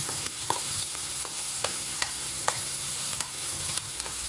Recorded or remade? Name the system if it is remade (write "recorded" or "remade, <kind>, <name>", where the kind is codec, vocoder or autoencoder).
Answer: remade, codec, SNAC